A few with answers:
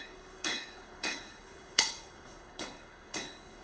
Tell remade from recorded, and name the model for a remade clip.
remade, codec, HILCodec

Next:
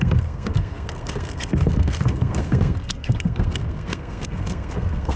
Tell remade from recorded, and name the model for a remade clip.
remade, codec, SNAC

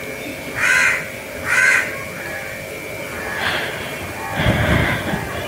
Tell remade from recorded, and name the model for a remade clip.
recorded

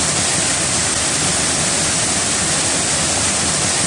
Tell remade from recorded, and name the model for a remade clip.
recorded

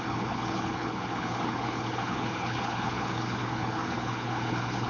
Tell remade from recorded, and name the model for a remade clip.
remade, codec, HILCodec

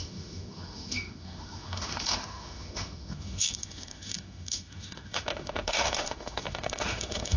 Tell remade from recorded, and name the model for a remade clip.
remade, autoencoder, DAC-VAE